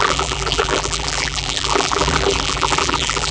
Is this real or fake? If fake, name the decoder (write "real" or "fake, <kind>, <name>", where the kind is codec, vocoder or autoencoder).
fake, vocoder, BigVGAN v2